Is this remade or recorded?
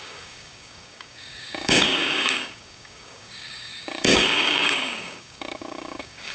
remade